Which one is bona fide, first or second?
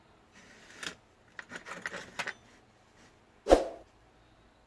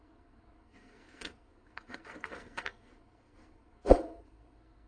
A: first